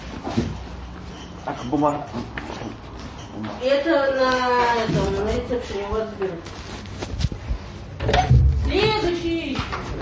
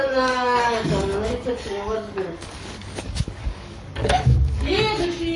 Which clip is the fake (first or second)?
second